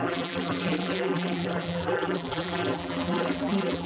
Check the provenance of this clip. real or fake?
fake